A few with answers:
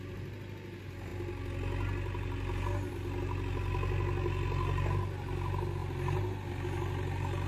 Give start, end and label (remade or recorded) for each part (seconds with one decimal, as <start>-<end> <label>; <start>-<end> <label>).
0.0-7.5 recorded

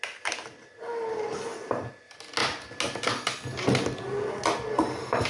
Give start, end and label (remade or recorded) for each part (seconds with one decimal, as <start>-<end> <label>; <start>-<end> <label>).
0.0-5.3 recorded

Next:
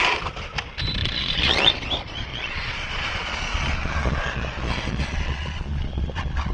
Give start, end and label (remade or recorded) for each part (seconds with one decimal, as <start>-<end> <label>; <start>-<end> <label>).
0.0-1.0 recorded; 1.0-1.7 remade; 1.7-2.3 recorded; 2.3-6.5 remade